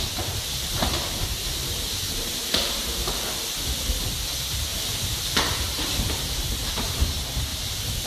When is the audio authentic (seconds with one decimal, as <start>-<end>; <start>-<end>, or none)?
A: 0.0-4.7; 6.7-7.5